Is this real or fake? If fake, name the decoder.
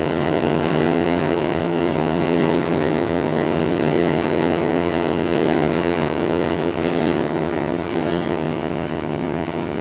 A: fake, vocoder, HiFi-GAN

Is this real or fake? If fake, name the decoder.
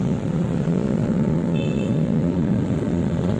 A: fake, vocoder, Vocos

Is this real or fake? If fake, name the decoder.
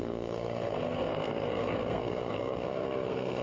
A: fake, codec, SNAC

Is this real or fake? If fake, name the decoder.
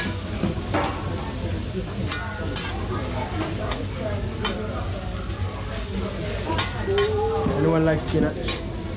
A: real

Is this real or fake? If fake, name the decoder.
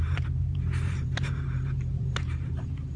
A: fake, vocoder, BigVGAN v2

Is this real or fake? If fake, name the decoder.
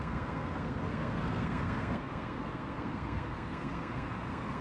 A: fake, codec, SNAC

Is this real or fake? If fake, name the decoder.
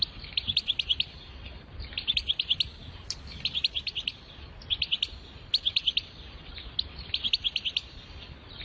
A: real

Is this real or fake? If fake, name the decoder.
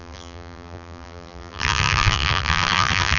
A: fake, vocoder, BigVGAN v2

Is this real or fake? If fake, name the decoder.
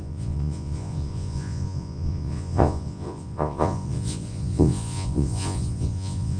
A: fake, vocoder, Vocos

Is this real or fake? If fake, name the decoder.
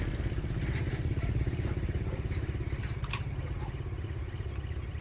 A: real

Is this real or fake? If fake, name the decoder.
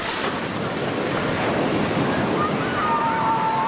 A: real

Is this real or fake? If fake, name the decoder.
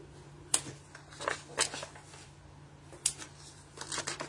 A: real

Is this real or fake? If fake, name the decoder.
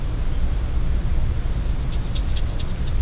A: real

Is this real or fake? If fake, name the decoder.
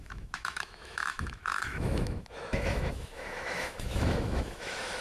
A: fake, autoencoder, DAC-VAE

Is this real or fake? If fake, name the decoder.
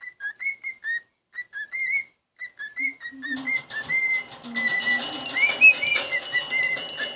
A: real